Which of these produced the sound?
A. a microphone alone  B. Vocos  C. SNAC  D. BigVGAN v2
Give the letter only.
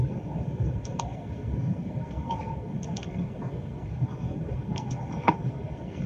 C